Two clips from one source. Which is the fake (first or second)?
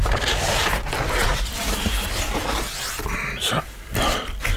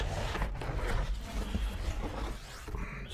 first